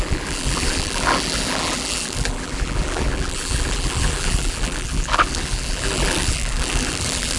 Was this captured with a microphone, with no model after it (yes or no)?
no